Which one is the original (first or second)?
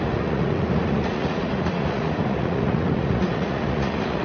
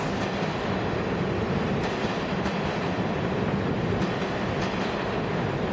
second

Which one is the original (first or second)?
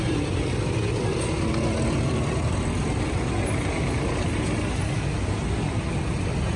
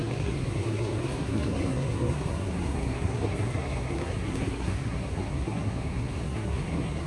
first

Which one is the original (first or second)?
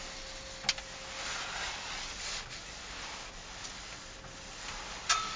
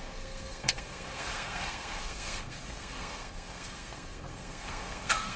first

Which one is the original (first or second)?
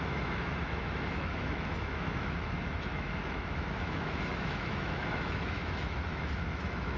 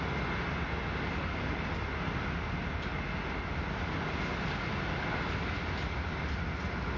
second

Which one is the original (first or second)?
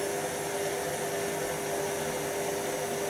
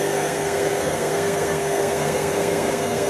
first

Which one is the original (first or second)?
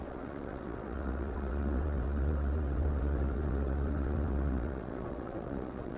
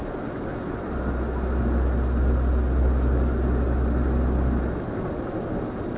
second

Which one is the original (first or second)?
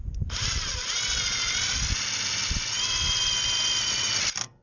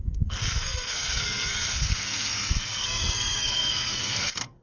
first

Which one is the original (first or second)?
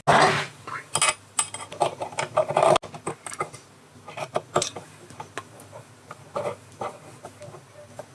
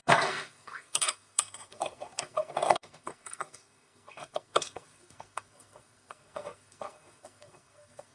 first